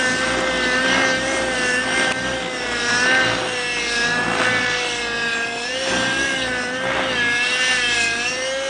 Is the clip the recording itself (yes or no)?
yes